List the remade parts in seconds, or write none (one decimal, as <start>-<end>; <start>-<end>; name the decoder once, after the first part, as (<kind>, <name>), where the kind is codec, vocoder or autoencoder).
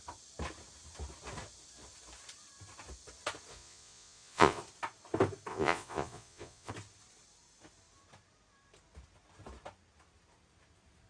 3.5-4.6 (vocoder, Vocos); 5.5-6.7